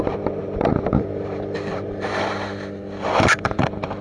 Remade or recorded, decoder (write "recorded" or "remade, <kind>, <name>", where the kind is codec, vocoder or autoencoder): remade, vocoder, BigVGAN v2